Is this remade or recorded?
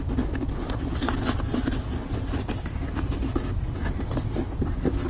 recorded